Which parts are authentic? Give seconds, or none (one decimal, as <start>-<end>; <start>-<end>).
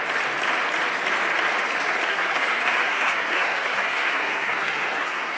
0.0-2.1